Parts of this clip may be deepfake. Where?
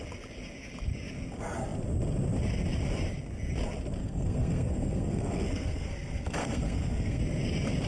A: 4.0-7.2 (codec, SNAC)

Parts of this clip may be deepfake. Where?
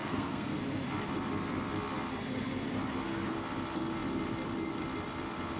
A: 0.0-0.6 (codec, SNAC)